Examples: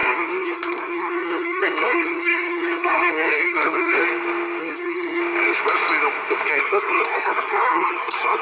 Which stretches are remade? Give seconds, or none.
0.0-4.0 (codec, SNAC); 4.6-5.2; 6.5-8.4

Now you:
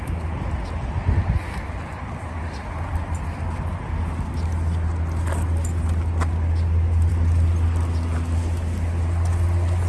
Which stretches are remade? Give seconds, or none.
none

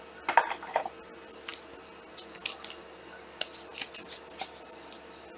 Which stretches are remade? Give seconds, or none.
none